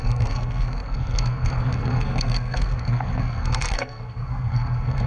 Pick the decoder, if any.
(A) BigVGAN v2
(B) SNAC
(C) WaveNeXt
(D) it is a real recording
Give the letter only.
B